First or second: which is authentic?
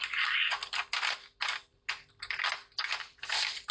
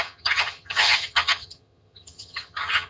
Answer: first